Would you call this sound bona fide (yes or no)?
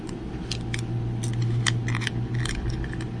yes